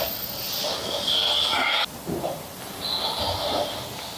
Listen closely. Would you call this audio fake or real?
real